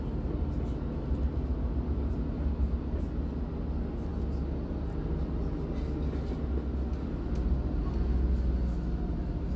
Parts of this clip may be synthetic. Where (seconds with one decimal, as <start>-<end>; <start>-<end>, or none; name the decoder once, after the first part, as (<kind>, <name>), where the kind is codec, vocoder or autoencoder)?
none